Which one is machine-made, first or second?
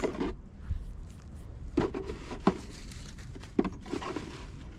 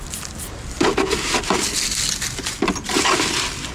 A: first